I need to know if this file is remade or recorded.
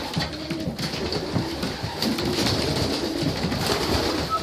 recorded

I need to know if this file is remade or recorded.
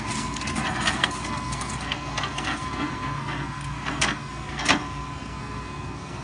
remade